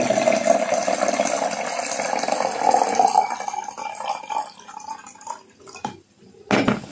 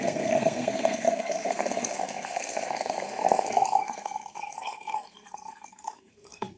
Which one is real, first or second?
first